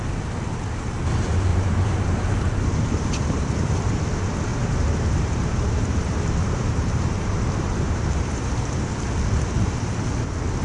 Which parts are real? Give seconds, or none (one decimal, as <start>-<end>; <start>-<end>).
0.0-1.5; 4.0-4.5; 8.8-10.6